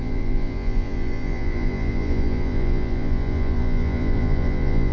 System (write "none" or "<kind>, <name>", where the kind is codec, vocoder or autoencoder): vocoder, Vocos